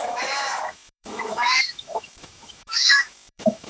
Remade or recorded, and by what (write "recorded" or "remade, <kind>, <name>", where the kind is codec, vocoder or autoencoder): remade, autoencoder, DAC-VAE